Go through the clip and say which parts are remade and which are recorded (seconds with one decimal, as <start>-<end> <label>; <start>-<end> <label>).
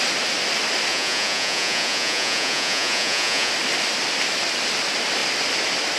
0.0-0.9 recorded; 0.9-3.5 remade; 3.5-6.0 recorded